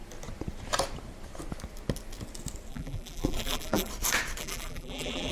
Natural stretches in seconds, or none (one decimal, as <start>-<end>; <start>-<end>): 0.0-2.7; 3.9-4.4